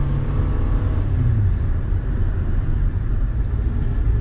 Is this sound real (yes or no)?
yes